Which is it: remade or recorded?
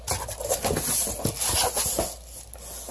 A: recorded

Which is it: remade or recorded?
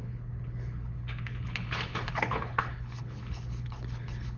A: remade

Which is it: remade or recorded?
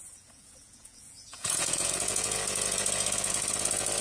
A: remade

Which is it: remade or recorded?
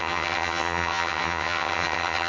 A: remade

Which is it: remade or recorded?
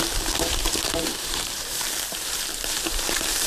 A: remade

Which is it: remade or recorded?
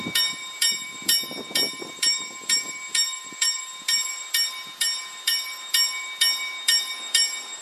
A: remade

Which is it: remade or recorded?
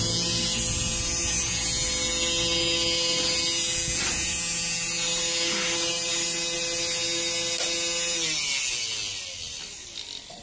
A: recorded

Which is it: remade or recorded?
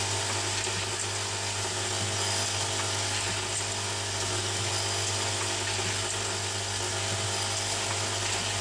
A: recorded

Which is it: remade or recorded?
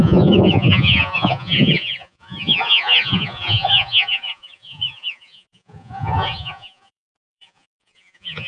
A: remade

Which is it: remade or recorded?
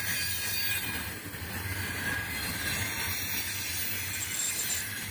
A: recorded